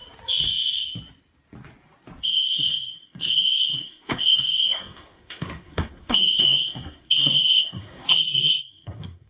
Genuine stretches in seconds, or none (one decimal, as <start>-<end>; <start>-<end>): 0.0-2.2